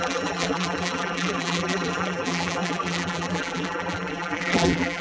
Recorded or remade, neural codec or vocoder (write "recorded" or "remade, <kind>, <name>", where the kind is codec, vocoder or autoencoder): remade, vocoder, BigVGAN v2